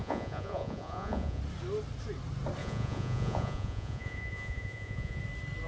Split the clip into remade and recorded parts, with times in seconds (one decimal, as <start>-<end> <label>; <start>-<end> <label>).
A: 0.0-1.4 remade; 1.4-2.6 recorded; 2.6-5.2 remade; 5.2-5.7 recorded